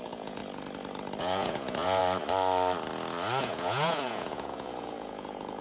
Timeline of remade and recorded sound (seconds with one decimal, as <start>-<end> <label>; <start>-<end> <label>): 0.0-0.4 remade; 0.4-1.2 recorded; 1.2-2.0 remade; 2.0-3.4 recorded; 3.4-5.6 remade